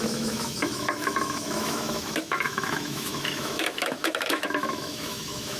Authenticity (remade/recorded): remade